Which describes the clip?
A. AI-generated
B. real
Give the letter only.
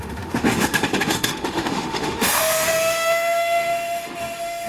A